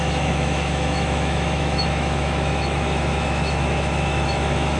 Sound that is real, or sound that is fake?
fake